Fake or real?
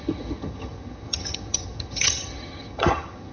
fake